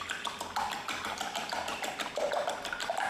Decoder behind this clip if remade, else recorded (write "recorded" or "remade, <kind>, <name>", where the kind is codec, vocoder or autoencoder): recorded